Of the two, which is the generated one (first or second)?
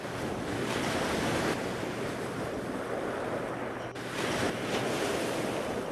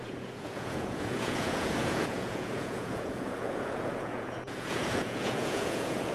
second